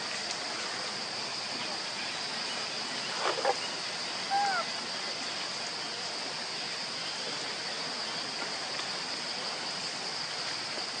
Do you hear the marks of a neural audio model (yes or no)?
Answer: no